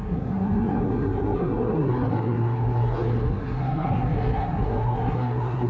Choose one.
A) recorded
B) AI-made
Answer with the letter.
B